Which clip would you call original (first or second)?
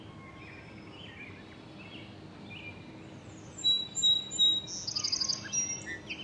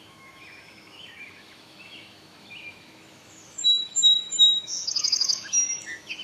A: first